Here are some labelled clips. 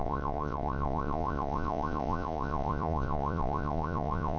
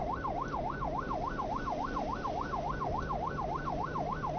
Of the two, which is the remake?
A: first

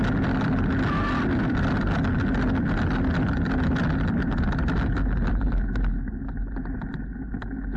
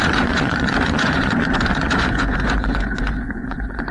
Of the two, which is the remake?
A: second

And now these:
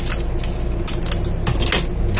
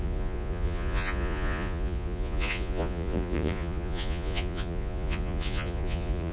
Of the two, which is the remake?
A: second